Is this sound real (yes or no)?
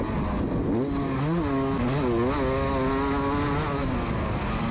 yes